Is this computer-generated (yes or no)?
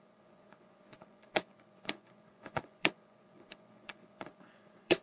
yes